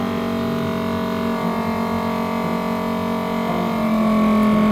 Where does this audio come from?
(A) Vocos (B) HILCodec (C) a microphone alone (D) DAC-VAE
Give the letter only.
C